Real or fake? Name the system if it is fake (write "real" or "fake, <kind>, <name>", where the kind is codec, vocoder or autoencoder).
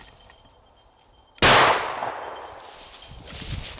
real